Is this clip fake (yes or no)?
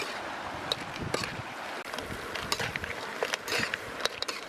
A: no